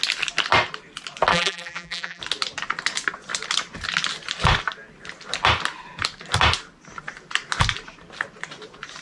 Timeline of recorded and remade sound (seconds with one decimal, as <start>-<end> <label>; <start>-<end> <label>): 0.0-1.3 recorded; 1.3-2.2 remade; 2.2-9.0 recorded